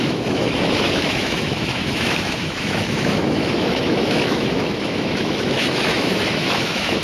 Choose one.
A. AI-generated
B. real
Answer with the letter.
A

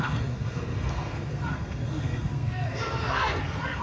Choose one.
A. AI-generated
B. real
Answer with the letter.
A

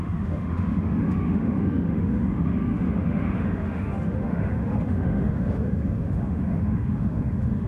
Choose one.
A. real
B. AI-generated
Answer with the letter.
B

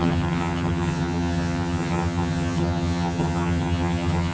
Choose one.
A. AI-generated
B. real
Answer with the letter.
A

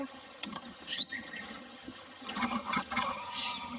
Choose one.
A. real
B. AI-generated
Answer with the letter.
B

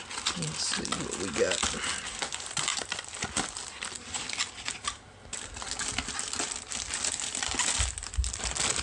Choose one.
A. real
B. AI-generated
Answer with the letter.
A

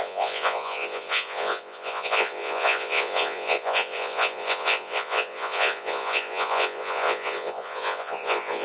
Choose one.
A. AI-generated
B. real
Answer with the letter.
A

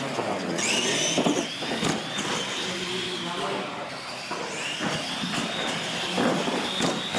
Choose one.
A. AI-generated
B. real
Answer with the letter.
B